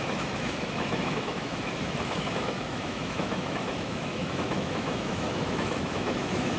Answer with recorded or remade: remade